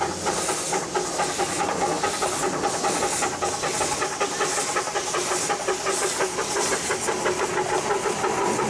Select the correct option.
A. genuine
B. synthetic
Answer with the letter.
A